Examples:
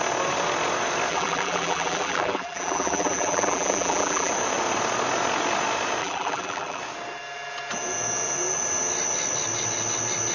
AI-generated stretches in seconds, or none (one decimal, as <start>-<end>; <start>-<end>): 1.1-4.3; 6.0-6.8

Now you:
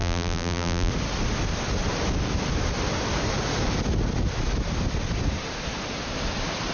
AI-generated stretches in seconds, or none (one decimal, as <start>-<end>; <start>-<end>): 0.0-0.9

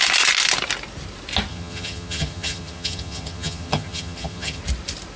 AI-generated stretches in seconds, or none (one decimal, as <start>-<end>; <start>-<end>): 1.5-4.6

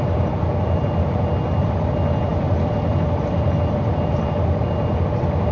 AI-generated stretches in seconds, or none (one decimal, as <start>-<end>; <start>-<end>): none

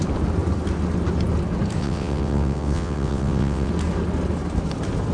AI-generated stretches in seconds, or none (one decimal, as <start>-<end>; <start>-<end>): 1.8-3.7